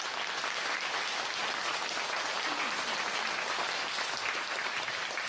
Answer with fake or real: real